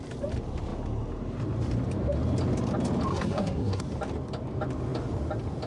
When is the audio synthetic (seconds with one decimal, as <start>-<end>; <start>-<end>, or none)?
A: 3.1-3.8